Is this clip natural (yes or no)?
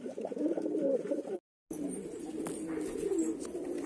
yes